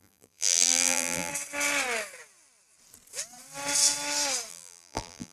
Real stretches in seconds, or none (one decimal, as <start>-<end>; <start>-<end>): 1.3-4.5